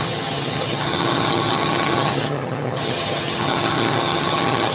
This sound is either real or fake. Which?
fake